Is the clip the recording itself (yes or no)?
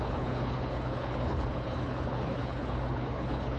no